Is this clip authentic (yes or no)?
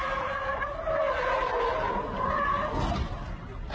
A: yes